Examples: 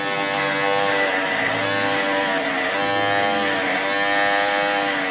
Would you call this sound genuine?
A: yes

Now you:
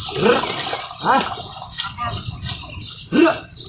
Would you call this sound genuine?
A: yes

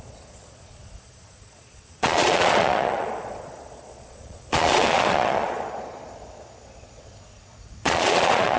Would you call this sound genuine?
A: no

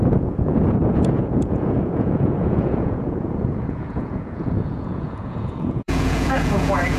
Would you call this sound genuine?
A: no